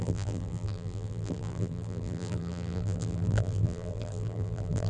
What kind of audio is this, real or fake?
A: fake